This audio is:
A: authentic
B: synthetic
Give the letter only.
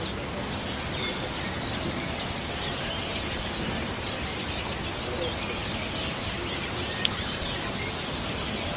A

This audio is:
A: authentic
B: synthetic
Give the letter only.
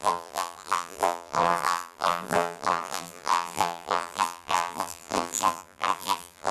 B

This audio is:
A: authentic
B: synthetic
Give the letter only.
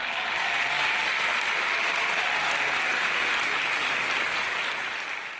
A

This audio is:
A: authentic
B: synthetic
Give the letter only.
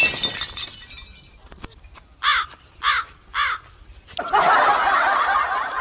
A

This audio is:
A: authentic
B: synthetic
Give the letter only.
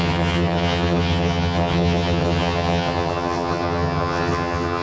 B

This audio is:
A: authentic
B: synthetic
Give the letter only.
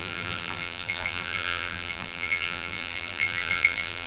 B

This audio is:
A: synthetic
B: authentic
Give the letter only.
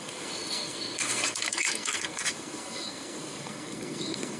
A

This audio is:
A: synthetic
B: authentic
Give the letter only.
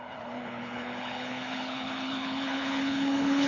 A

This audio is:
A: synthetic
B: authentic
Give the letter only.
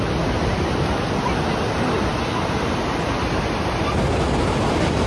B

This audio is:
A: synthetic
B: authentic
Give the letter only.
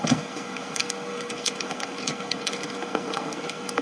A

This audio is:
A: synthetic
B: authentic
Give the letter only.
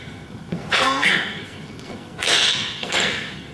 A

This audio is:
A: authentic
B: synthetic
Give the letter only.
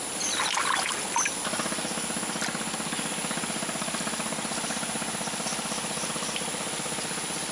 A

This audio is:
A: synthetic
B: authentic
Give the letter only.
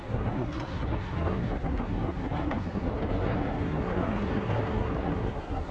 A